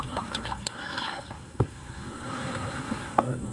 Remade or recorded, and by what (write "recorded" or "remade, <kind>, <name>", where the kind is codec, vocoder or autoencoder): remade, codec, SNAC